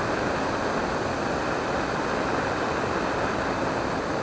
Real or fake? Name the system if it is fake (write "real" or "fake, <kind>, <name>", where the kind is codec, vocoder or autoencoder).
real